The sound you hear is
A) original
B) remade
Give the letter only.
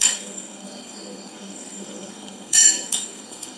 B